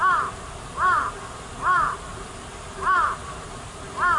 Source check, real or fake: real